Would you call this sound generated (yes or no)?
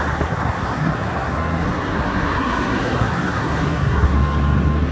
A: yes